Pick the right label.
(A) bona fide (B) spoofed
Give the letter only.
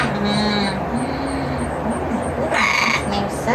A